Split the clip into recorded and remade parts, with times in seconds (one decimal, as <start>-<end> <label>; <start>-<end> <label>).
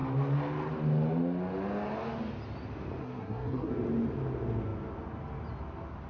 0.0-3.0 recorded; 3.0-3.7 remade; 3.7-6.1 recorded